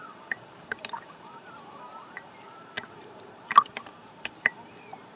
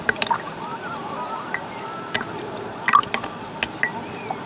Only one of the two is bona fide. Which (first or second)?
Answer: second